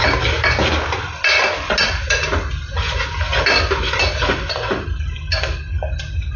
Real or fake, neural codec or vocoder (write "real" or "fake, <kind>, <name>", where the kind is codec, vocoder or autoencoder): real